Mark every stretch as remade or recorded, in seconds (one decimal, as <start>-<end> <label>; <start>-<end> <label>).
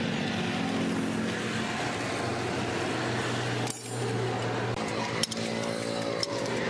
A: 0.0-6.7 recorded